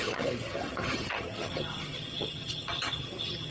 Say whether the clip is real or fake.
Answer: fake